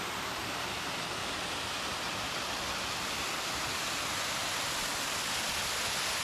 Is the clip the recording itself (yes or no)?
yes